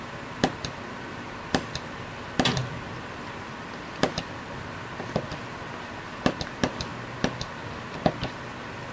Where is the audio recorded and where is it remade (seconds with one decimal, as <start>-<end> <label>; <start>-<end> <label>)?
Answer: 0.0-6.9 remade; 6.9-7.6 recorded; 7.6-8.9 remade